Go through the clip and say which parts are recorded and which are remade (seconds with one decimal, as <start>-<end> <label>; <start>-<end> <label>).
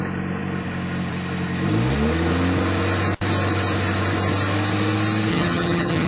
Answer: 0.0-5.3 recorded; 5.3-6.1 remade